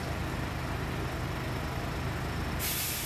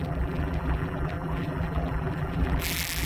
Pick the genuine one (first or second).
first